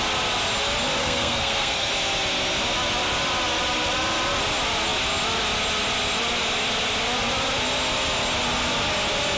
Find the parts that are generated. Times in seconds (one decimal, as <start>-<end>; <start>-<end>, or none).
1.0-1.9